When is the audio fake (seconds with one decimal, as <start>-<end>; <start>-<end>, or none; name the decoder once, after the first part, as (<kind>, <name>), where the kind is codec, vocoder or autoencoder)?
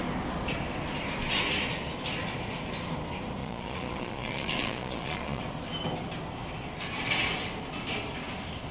3.4-5.4 (vocoder, Vocos)